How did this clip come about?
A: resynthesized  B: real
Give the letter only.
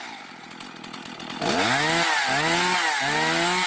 B